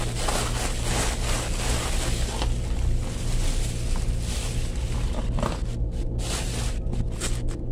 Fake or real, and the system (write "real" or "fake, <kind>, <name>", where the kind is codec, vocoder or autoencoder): real